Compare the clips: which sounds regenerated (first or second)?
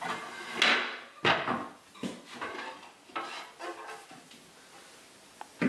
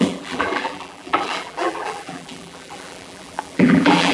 second